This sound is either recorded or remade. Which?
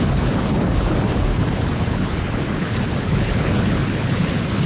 remade